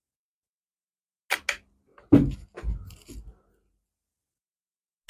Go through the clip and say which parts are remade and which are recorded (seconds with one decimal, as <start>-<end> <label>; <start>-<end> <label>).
0.0-5.1 recorded